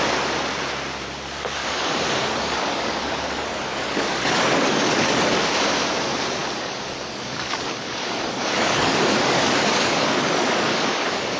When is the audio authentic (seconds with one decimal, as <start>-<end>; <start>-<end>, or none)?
0.0-1.6; 5.4-6.4